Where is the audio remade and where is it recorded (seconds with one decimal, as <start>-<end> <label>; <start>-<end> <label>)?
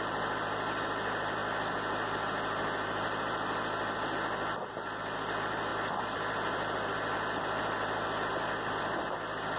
0.0-9.6 recorded